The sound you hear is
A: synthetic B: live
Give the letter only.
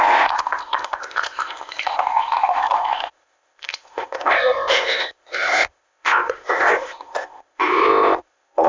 A